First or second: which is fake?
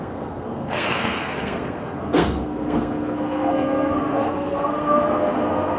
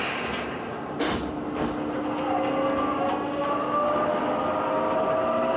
first